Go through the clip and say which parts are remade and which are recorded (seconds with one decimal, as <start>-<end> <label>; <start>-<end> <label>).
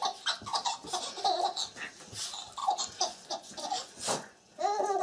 0.0-2.6 recorded; 2.6-5.0 remade